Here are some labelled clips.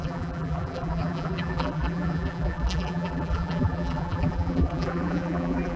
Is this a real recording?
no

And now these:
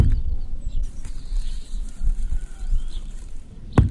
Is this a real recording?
no